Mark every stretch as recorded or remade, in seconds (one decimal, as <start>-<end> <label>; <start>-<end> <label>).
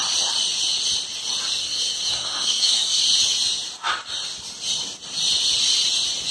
0.0-1.6 recorded; 1.6-3.0 remade; 3.0-6.3 recorded